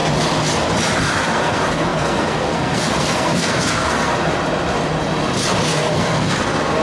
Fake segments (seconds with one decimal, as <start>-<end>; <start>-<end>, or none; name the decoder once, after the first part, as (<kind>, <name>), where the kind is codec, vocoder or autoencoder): 1.0-4.1 (codec, SNAC); 5.7-6.8